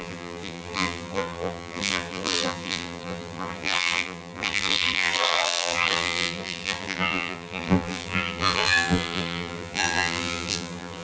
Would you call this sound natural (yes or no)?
no